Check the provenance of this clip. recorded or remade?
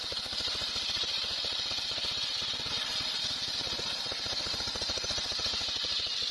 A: recorded